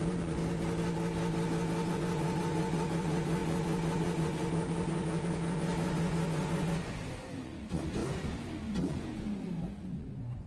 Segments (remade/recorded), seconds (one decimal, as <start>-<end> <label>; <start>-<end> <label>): 0.0-0.4 remade; 0.4-1.9 recorded; 1.9-10.5 remade